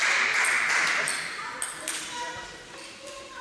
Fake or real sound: real